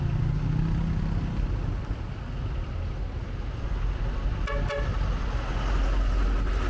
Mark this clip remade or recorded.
recorded